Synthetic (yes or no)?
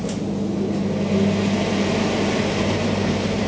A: no